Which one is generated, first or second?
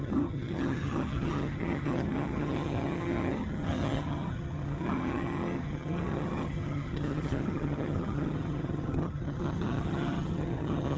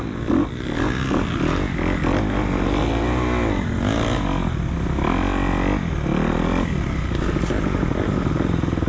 first